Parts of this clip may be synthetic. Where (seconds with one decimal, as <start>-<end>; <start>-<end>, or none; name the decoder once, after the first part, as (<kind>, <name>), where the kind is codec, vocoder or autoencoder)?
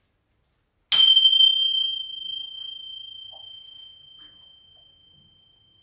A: none